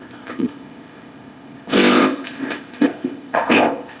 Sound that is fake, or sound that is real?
fake